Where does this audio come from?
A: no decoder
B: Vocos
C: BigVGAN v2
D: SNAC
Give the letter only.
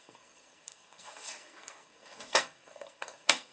D